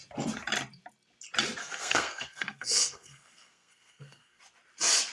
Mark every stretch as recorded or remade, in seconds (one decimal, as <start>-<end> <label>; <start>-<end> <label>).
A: 0.0-1.6 recorded; 1.6-4.4 remade; 4.4-5.1 recorded